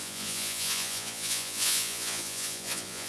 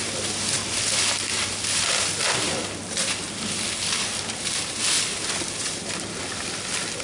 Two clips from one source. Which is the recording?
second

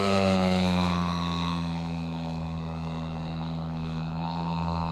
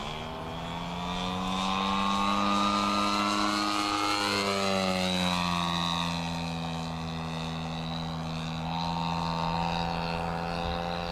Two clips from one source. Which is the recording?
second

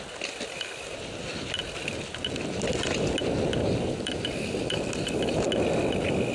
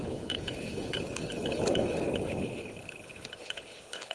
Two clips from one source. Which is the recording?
first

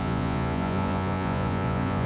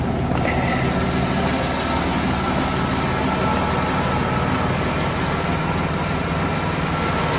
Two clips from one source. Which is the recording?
second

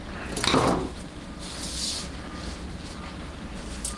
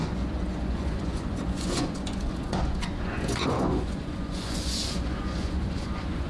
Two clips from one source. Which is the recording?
first